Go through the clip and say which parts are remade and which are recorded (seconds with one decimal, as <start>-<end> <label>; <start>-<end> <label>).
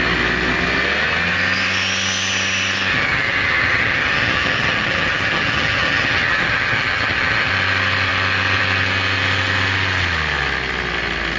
0.0-2.9 recorded; 2.9-7.5 remade; 7.5-11.4 recorded